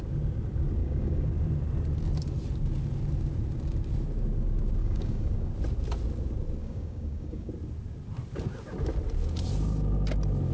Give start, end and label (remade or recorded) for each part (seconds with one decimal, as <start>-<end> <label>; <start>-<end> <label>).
0.0-0.8 recorded; 0.8-1.3 remade; 1.3-4.8 recorded; 4.8-5.5 remade; 5.5-6.6 recorded; 6.6-7.5 remade; 7.5-10.5 recorded